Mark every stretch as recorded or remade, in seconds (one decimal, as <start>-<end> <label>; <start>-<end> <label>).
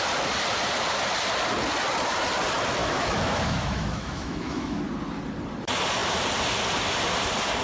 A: 0.0-2.8 recorded; 2.8-4.8 remade; 4.8-7.6 recorded